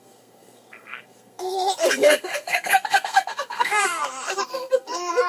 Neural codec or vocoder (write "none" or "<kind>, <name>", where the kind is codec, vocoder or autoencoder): codec, SNAC